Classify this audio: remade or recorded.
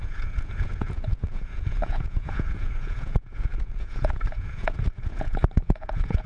remade